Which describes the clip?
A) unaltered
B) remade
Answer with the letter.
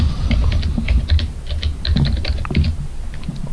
A